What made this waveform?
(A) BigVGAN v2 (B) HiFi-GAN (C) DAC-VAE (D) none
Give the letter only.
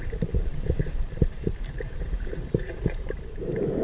A